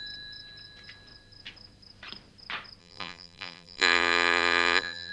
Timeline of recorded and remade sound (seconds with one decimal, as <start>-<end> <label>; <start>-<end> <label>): 0.0-2.8 recorded; 2.8-5.1 remade